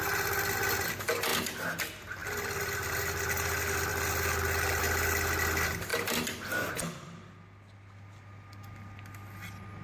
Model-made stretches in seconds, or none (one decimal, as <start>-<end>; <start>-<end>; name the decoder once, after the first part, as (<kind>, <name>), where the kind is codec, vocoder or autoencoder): none